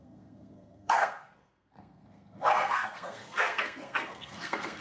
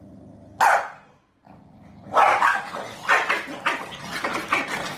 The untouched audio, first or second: second